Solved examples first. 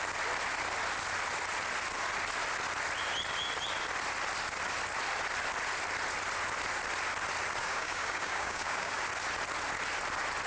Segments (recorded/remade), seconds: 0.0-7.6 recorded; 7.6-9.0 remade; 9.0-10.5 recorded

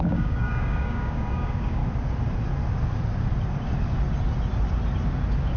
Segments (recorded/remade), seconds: 0.0-1.8 remade; 1.8-5.6 recorded

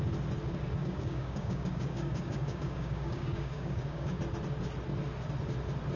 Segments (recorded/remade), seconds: 0.0-0.8 recorded; 0.8-4.2 remade; 4.2-6.0 recorded

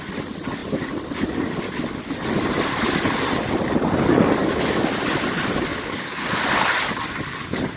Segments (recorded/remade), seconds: 0.0-4.4 recorded; 4.4-4.9 remade; 4.9-5.7 recorded; 5.7-6.4 remade; 6.4-7.8 recorded

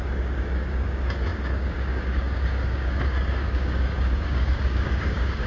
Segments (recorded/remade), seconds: 0.0-5.5 remade

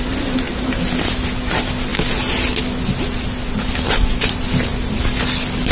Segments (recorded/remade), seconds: 0.0-5.7 recorded

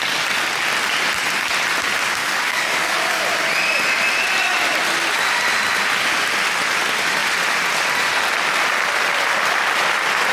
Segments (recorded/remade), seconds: 0.0-2.2 recorded; 2.2-3.2 remade; 3.2-10.3 recorded

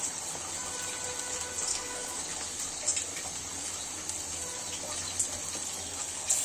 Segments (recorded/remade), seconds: 0.0-1.7 recorded; 1.7-2.3 remade; 2.3-6.4 recorded